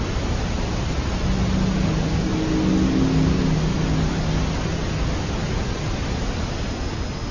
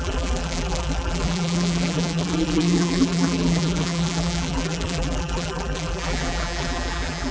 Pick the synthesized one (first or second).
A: second